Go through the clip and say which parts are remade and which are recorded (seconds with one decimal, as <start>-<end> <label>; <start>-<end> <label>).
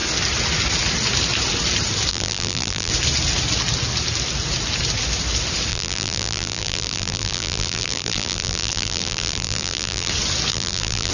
0.0-2.1 recorded; 2.1-2.9 remade; 2.9-5.7 recorded; 5.7-10.1 remade; 10.1-10.5 recorded; 10.5-11.1 remade